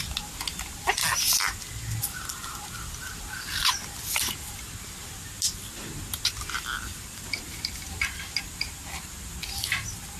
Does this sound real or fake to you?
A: real